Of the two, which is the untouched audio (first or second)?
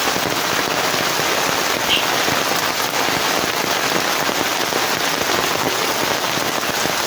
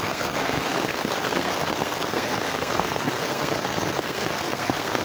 first